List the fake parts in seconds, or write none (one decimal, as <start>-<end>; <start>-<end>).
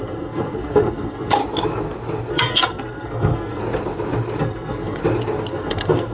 0.0-1.4; 2.3-3.6; 4.4-5.0; 5.5-6.1